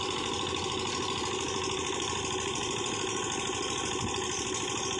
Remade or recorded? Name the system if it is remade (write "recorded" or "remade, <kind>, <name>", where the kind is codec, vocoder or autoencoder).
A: recorded